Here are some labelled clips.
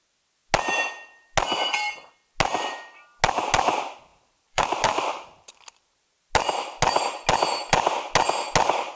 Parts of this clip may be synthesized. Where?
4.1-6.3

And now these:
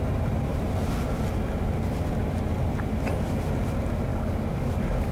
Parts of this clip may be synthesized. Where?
4.1-5.1

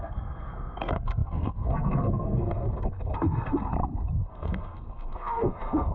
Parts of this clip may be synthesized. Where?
0.0-3.7; 4.3-5.9

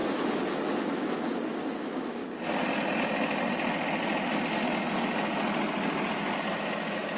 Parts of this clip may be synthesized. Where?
0.9-1.3; 1.8-2.2; 6.5-7.2